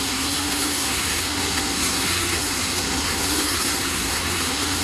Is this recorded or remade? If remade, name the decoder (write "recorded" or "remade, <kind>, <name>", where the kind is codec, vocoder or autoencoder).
remade, codec, SNAC